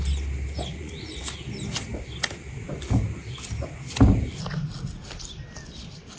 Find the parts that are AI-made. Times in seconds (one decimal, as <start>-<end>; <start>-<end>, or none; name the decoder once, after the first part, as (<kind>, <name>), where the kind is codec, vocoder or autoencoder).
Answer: 0.7-1.2 (vocoder, Vocos)